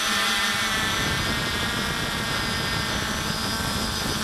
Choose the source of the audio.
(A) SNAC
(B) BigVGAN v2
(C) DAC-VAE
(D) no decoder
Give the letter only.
D